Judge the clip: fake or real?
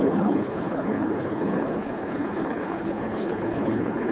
fake